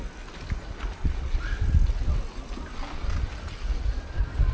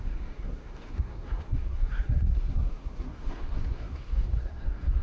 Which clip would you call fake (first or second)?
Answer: second